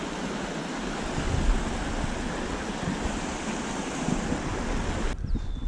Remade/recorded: recorded